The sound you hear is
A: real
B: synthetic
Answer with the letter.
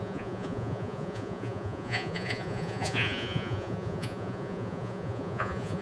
B